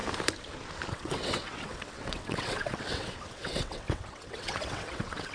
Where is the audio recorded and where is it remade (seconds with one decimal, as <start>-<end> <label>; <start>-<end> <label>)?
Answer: 0.0-0.9 recorded; 0.9-5.3 remade